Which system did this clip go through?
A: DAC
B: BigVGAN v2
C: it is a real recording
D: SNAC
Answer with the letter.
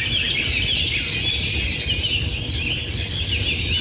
C